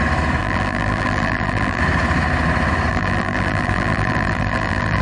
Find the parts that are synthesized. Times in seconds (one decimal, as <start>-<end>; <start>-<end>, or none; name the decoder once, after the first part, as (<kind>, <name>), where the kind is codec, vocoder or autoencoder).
0.4-1.8 (vocoder, BigVGAN v2); 2.9-5.0